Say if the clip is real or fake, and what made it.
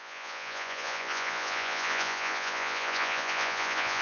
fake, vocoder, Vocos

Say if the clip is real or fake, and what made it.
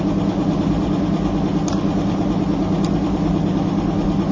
real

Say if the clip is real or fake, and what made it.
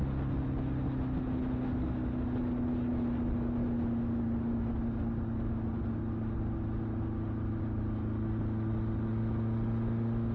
real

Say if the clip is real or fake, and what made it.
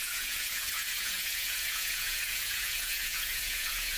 fake, vocoder, Vocos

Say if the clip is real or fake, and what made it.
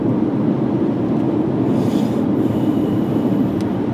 real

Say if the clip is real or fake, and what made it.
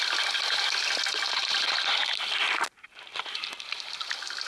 real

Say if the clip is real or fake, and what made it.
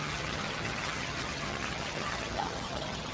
fake, vocoder, HiFi-GAN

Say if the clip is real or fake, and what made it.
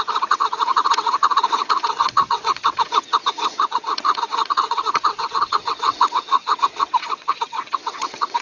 fake, vocoder, WaveNeXt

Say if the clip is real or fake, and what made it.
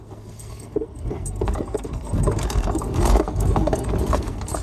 fake, codec, SNAC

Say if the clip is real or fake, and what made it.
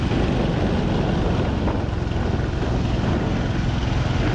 real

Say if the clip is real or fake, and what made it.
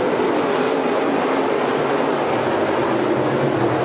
real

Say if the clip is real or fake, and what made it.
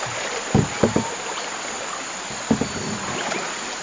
real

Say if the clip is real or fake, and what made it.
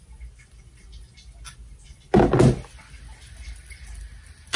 real